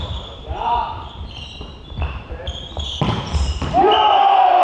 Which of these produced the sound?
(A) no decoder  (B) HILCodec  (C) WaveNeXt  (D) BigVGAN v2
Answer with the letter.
D